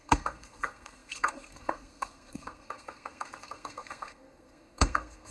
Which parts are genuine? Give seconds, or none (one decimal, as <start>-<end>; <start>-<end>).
none